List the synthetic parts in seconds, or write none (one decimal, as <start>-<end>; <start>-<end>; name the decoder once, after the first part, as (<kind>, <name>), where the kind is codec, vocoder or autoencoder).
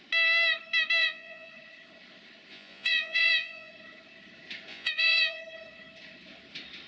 1.0-1.5 (vocoder, Vocos); 2.5-3.7; 4.7-5.4